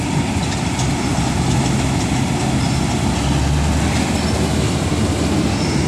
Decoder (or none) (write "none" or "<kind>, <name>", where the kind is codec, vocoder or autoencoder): none